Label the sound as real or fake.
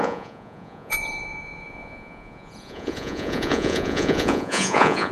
fake